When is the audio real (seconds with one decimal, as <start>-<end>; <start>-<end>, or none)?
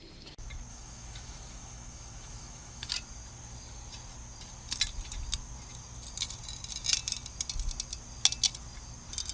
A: 0.0-0.7; 2.9-9.3